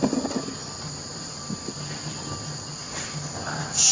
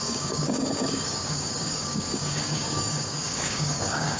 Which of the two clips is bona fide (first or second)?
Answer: first